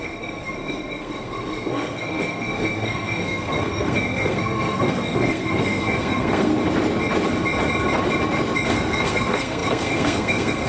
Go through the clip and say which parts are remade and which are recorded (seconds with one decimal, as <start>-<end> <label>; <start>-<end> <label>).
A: 0.0-6.5 remade; 6.5-8.7 recorded; 8.7-10.7 remade